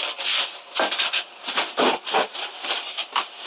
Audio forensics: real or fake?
real